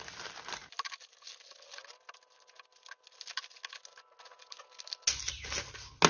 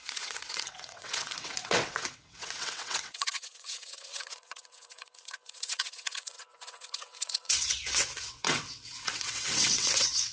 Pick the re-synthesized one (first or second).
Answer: second